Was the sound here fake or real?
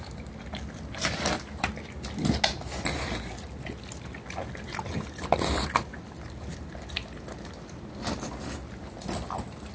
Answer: real